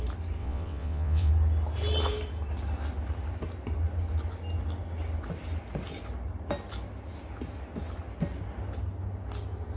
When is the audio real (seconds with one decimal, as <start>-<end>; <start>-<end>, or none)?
0.0-0.4; 1.3-9.8